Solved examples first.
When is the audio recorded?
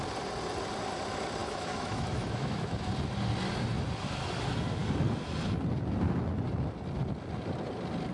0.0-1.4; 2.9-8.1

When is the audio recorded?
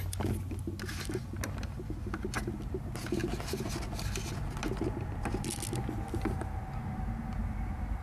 0.0-8.0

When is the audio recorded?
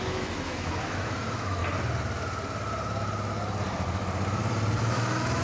1.6-4.8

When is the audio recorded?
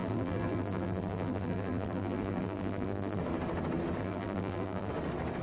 3.2-4.0; 4.9-5.4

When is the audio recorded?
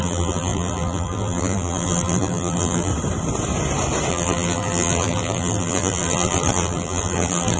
2.9-4.1